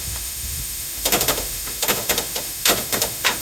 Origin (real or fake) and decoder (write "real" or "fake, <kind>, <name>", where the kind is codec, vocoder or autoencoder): fake, autoencoder, DAC-VAE